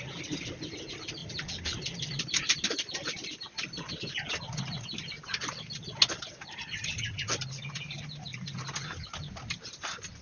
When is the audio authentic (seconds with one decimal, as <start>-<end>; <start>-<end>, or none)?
0.0-10.2

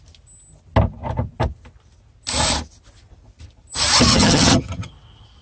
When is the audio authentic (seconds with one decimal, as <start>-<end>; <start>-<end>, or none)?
0.0-4.1; 4.9-5.4

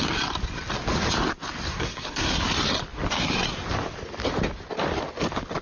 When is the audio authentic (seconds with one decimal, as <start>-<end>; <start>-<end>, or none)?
0.0-1.7; 2.4-5.6

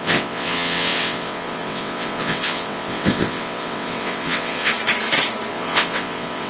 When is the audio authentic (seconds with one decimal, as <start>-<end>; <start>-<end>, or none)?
4.7-5.5

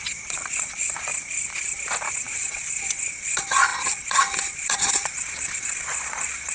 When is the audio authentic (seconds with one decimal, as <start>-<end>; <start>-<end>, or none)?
1.1-2.1

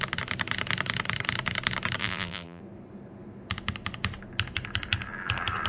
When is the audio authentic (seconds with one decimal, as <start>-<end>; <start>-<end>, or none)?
0.0-2.0; 2.6-5.7

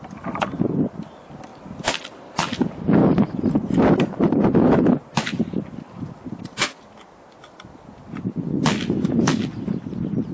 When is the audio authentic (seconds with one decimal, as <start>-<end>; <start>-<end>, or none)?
0.0-3.0; 5.5-10.3

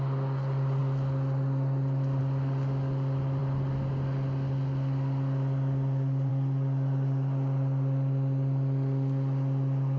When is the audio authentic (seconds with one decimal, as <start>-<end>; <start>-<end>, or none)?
0.0-10.0